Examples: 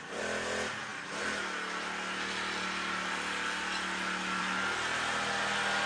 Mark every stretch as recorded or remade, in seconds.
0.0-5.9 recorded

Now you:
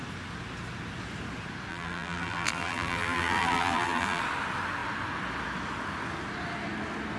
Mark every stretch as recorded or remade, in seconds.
0.0-1.7 recorded; 1.7-4.2 remade; 4.2-7.2 recorded

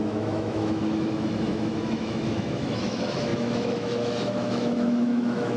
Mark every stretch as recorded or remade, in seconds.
0.0-5.6 remade

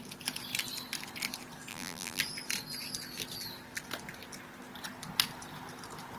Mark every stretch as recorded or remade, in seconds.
0.0-1.7 recorded; 1.7-2.2 remade; 2.2-6.2 recorded

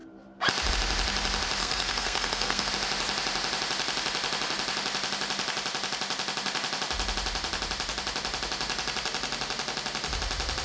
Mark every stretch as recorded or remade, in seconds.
0.0-1.6 recorded; 1.6-2.7 remade; 2.7-10.6 recorded

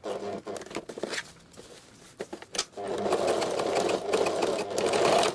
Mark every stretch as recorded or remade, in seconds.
0.0-5.3 recorded